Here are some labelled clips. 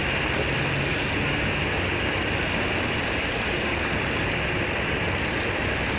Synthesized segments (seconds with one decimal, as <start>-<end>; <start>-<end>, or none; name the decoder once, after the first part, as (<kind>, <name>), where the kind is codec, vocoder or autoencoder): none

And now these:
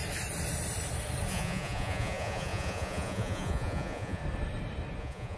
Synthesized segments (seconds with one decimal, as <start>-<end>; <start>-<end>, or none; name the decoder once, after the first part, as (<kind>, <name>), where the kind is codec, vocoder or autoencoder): 1.3-4.2 (vocoder, Vocos); 5.0-5.4

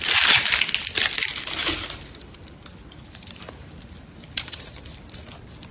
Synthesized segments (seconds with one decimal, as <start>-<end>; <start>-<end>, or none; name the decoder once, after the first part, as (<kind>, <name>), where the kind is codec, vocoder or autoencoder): 1.6-4.8 (vocoder, BigVGAN v2)